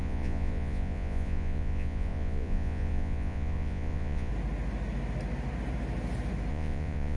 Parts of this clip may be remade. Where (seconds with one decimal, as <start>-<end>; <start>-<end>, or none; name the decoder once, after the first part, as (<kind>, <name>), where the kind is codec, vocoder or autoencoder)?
0.0-4.3 (vocoder, Vocos); 6.5-7.2